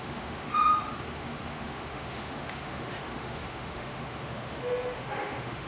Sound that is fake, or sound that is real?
fake